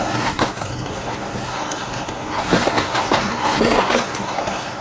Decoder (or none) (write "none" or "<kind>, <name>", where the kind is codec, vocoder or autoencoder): codec, SNAC